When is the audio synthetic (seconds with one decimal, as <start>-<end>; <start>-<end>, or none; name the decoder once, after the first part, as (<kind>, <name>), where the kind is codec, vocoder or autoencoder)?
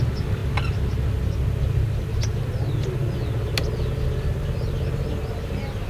none